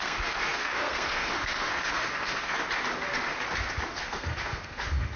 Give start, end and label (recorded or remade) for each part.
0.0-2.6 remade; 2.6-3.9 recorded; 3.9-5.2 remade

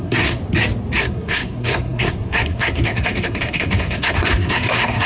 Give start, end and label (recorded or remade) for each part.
0.0-0.4 remade; 0.4-1.0 recorded; 1.0-5.1 remade

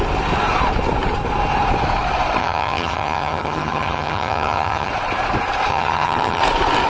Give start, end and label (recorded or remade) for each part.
0.0-2.4 recorded; 2.4-4.9 remade; 4.9-5.7 recorded; 5.7-6.4 remade; 6.4-6.9 recorded

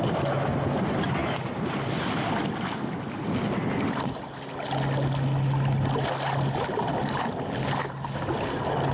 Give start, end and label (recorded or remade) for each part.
0.0-8.9 recorded

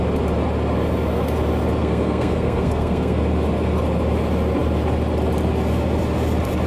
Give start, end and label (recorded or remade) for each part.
0.0-1.8 recorded; 1.8-3.2 remade; 3.2-6.7 recorded

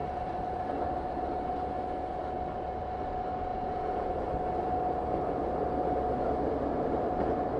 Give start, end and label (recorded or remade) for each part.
0.0-3.5 recorded; 3.5-4.1 remade; 4.1-7.6 recorded

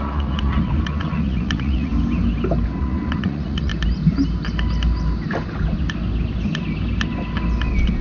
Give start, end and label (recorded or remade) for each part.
0.0-1.9 remade; 1.9-2.8 recorded; 2.8-3.7 remade; 3.7-8.0 recorded